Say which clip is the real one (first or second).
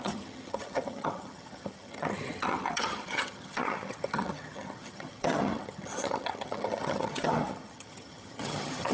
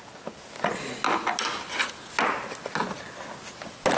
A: second